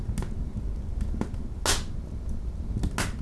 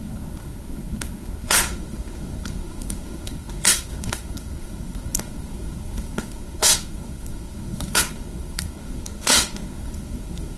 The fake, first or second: second